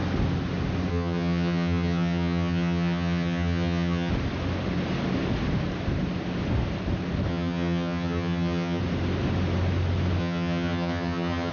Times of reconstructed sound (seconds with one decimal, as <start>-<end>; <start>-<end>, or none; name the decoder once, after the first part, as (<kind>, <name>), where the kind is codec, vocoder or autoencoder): 0.9-4.1 (vocoder, HiFi-GAN); 7.3-8.8; 10.2-11.5